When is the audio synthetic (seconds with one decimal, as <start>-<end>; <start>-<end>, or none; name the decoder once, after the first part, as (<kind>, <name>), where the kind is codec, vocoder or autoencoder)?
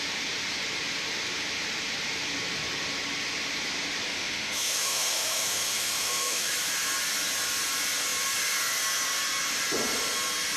4.1-6.5 (autoencoder, DAC-VAE)